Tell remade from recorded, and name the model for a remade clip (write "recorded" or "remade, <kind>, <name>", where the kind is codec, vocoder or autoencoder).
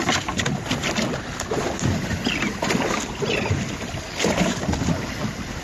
recorded